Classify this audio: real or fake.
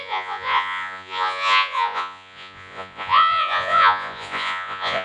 fake